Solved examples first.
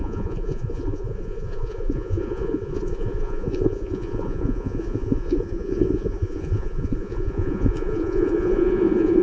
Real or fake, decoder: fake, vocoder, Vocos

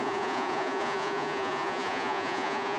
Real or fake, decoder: fake, vocoder, Vocos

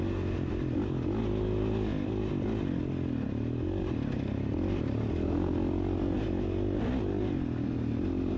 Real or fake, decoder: real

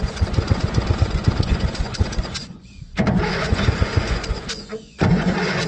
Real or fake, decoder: fake, vocoder, Vocos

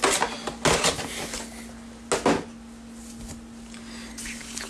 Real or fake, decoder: real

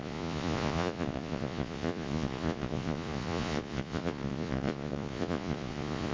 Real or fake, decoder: fake, vocoder, Vocos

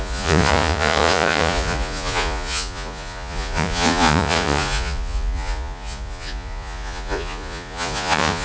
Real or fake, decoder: fake, vocoder, Vocos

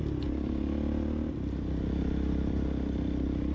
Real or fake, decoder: real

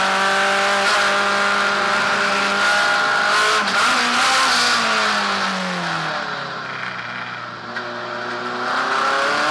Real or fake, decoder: real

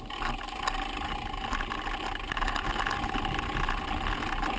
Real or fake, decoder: real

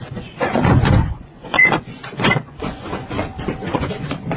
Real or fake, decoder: fake, vocoder, Vocos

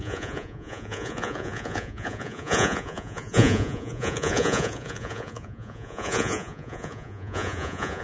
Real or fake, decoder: fake, vocoder, Vocos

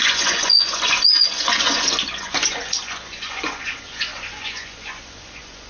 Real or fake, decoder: fake, vocoder, Vocos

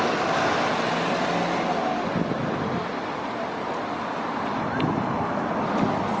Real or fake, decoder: real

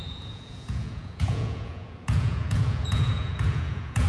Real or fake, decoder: fake, vocoder, Vocos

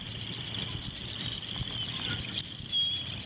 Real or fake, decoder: real